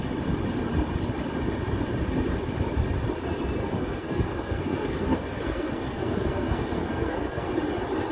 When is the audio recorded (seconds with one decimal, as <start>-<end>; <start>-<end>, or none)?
0.0-3.6; 7.5-8.1